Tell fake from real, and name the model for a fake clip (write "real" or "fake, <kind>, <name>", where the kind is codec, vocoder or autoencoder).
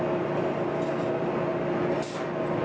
real